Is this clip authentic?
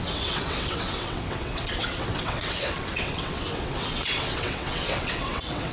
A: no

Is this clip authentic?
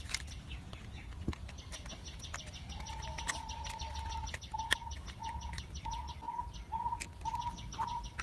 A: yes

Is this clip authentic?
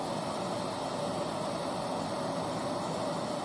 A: yes